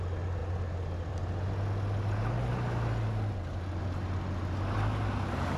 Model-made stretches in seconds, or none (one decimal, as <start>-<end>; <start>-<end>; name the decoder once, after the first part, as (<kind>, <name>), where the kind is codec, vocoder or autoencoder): none